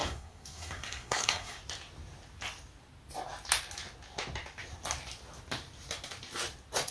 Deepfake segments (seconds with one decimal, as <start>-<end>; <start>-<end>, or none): 0.0-1.6